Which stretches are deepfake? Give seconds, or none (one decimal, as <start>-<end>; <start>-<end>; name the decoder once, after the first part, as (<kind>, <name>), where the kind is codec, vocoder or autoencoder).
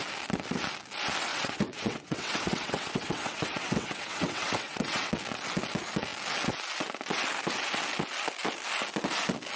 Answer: 1.3-5.1 (vocoder, WaveNeXt)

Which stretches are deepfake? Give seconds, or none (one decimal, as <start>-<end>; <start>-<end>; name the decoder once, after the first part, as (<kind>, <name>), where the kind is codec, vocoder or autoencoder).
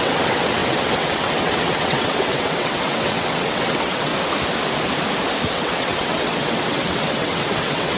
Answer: 0.0-4.1 (vocoder, WaveNeXt); 5.5-8.0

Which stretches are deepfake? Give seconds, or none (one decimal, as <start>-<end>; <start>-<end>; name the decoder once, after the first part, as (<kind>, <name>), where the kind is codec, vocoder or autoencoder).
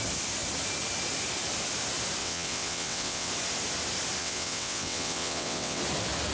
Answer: 2.2-3.3 (vocoder, WaveNeXt); 4.2-5.8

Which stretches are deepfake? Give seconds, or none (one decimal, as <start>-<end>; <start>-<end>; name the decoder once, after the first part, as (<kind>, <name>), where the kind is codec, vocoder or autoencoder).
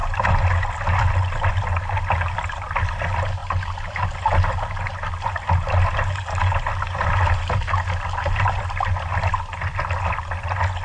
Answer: none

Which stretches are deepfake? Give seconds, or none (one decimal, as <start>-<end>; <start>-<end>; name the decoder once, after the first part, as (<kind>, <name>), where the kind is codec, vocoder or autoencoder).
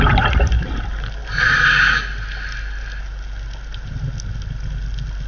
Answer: none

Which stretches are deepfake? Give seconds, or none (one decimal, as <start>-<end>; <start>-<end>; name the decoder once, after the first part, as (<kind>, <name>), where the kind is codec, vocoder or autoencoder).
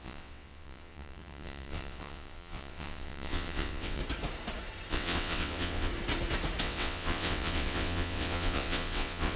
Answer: 0.0-4.0 (vocoder, WaveNeXt); 4.9-5.9; 6.6-9.4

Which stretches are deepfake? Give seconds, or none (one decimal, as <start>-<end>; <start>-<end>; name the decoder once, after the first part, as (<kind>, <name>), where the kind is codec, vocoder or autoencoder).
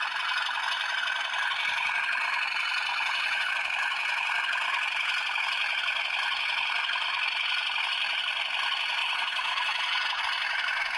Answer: 2.9-3.5 (vocoder, WaveNeXt); 9.0-10.2